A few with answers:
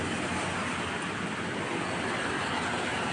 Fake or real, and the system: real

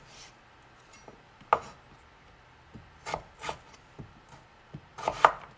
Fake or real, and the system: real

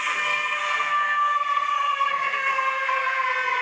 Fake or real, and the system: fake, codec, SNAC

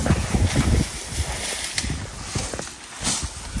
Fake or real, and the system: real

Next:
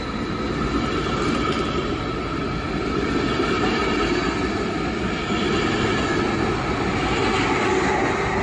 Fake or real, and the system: real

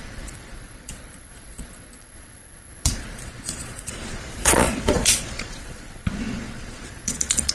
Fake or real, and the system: fake, vocoder, Vocos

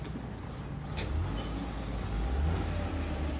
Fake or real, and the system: real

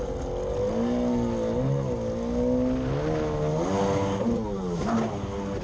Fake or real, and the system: real